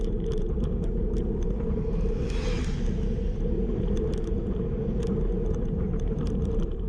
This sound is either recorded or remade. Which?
remade